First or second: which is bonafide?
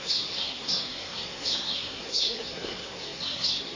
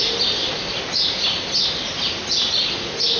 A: second